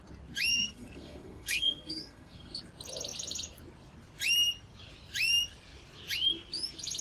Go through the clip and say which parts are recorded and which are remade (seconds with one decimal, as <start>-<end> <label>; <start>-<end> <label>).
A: 0.0-0.5 recorded; 0.5-2.6 remade; 2.6-7.0 recorded